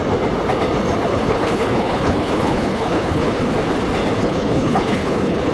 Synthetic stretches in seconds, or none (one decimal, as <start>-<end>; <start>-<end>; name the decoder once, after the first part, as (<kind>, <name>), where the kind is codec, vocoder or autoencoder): 1.1-3.4 (codec, HILCodec); 4.2-5.5

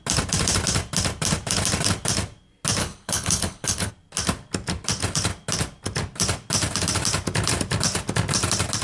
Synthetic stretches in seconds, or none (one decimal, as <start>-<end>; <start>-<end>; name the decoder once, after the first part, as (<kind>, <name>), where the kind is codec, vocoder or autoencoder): 2.8-3.9 (codec, HILCodec)

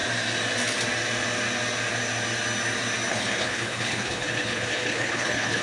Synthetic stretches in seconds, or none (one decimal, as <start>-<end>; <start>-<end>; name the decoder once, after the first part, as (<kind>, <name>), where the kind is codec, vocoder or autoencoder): 3.1-5.6 (codec, HILCodec)

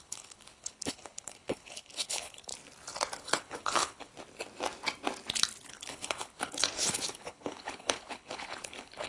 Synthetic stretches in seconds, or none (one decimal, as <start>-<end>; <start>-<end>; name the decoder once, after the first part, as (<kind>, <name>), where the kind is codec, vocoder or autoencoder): 0.0-2.5 (codec, HILCodec); 3.2-4.1; 5.7-9.1

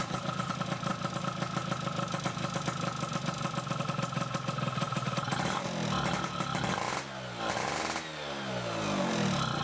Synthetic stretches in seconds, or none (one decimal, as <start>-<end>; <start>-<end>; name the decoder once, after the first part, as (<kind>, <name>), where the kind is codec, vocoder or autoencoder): 0.0-0.5 (codec, HILCodec)

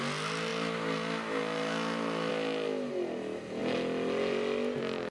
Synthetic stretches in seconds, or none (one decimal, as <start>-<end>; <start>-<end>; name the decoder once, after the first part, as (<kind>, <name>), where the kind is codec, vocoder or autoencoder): none